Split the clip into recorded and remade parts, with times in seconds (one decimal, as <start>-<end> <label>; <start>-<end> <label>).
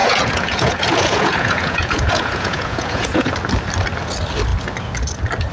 0.0-3.3 remade; 3.3-5.5 recorded